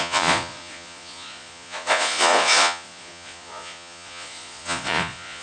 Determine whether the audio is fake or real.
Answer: fake